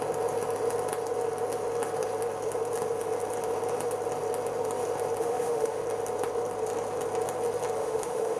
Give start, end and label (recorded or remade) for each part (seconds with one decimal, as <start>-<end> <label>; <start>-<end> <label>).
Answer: 0.0-5.2 recorded; 5.2-5.8 remade; 5.8-7.8 recorded; 7.8-8.4 remade